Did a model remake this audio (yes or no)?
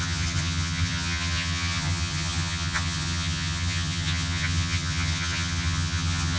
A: yes